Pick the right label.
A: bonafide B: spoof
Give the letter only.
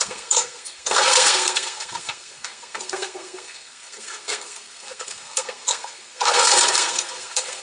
B